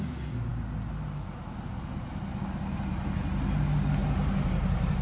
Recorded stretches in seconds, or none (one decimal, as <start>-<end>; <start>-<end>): 0.0-4.0